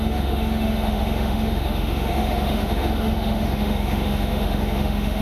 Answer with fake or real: fake